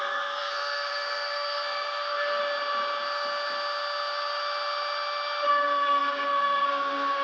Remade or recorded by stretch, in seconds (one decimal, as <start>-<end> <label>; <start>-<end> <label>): 0.0-2.4 remade; 2.4-5.5 recorded; 5.5-7.2 remade